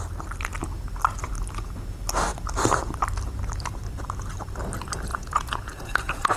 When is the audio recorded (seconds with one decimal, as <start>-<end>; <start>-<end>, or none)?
0.0-5.1

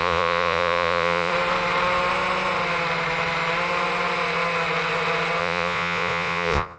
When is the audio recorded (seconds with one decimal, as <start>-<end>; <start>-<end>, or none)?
1.3-5.4